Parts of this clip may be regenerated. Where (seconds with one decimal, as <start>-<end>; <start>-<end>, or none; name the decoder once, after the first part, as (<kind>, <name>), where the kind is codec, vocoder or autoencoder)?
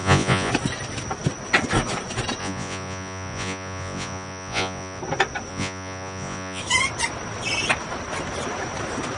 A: 0.0-0.5 (vocoder, Vocos); 2.4-5.0; 5.5-6.6